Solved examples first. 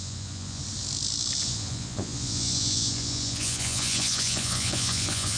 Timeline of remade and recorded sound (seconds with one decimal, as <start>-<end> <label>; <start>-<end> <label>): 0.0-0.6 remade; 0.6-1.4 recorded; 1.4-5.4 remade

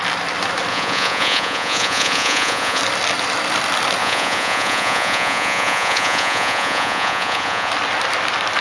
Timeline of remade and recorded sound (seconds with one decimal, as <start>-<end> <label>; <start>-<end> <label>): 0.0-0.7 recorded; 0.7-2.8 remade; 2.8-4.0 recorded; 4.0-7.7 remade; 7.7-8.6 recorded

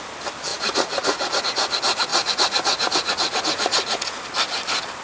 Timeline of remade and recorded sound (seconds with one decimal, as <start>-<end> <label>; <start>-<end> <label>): 0.0-0.5 recorded; 0.5-1.4 remade; 1.4-2.1 recorded; 2.1-4.2 remade; 4.2-5.0 recorded

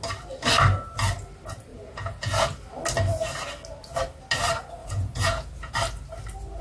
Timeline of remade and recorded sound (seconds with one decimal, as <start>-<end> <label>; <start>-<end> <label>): 0.0-1.7 recorded; 1.7-2.6 remade; 2.6-4.8 recorded; 4.8-5.7 remade; 5.7-6.6 recorded

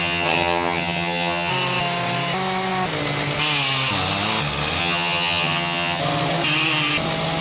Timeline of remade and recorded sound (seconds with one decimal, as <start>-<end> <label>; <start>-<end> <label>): 0.0-1.5 remade; 1.5-4.8 recorded; 4.8-6.0 remade; 6.0-7.4 recorded

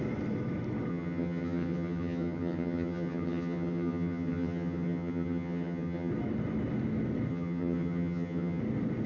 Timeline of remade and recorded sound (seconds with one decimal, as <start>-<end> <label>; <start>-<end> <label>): 0.0-0.9 recorded; 0.9-6.1 remade; 6.1-7.3 recorded; 7.3-8.6 remade; 8.6-9.1 recorded

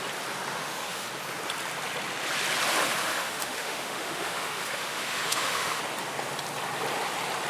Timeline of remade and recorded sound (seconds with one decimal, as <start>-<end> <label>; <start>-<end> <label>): 0.0-0.5 recorded; 0.5-1.1 remade; 1.1-3.0 recorded; 3.0-5.8 remade; 5.8-7.5 recorded